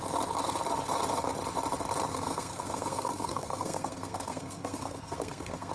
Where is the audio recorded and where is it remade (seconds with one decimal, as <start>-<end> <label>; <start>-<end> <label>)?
0.0-2.1 recorded; 2.1-5.7 remade